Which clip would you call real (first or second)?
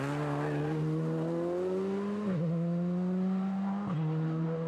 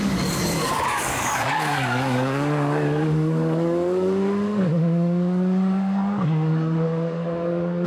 first